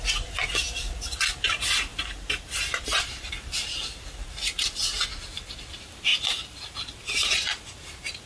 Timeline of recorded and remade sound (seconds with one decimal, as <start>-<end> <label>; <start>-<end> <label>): 0.0-1.9 recorded; 1.9-3.3 remade; 3.3-6.1 recorded; 6.1-8.3 remade